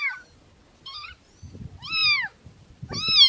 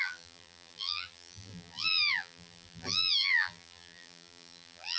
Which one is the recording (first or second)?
first